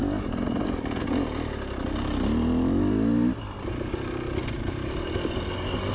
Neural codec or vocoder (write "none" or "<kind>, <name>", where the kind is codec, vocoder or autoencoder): none